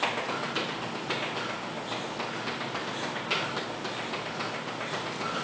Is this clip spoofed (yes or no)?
no